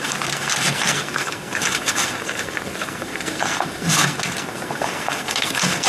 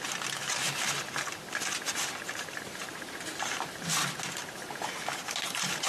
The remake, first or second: first